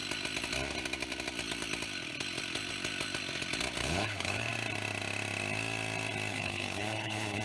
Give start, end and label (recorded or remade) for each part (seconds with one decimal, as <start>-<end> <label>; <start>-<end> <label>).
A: 0.0-3.8 recorded; 3.8-4.5 remade; 4.5-6.3 recorded; 6.3-7.4 remade